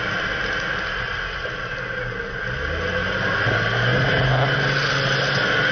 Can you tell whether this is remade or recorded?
recorded